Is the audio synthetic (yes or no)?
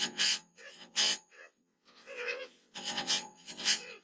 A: yes